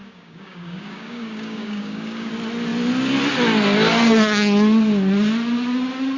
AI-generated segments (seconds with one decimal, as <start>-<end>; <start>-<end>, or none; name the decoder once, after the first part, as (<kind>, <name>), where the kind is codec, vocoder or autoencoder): 0.0-2.3 (codec, DAC)